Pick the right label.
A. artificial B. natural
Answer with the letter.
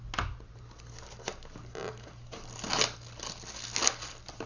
B